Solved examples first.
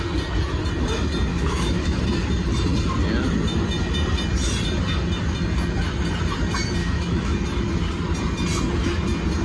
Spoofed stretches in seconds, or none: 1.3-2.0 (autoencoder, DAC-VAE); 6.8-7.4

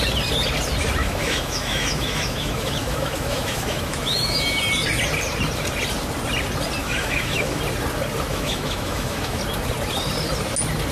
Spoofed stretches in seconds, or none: 1.0-4.6 (autoencoder, DAC-VAE); 6.8-7.6; 8.3-9.4

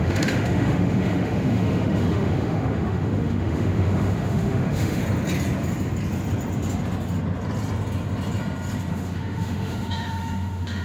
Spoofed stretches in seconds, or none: 0.0-5.0 (autoencoder, DAC-VAE); 8.9-10.8